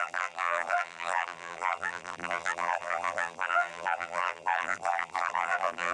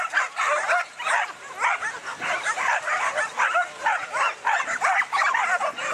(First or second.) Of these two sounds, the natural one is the second